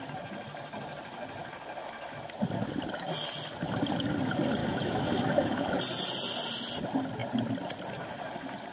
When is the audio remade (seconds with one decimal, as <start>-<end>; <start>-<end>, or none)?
4.6-5.8